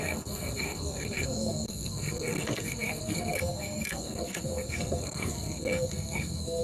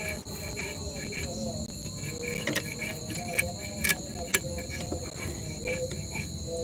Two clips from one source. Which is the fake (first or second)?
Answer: first